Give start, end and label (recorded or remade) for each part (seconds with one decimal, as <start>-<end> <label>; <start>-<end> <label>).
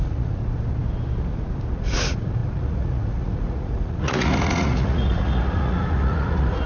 0.0-0.4 remade; 0.4-1.7 recorded; 1.7-6.7 remade